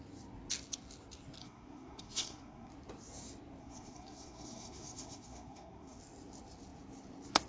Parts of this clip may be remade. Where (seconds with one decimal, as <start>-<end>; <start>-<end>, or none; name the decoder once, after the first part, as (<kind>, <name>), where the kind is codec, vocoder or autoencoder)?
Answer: 1.4-2.7 (codec, SNAC); 3.6-6.0